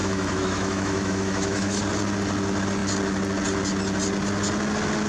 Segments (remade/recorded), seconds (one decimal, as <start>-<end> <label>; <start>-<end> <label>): 0.0-1.8 remade; 1.8-5.1 recorded